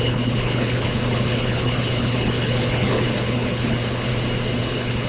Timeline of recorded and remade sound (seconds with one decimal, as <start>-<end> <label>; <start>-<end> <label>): 0.0-4.1 remade; 4.1-4.6 recorded; 4.6-5.1 remade